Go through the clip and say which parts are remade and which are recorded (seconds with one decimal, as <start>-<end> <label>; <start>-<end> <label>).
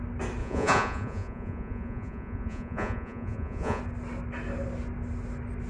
0.0-0.4 recorded; 0.4-3.8 remade; 3.8-5.7 recorded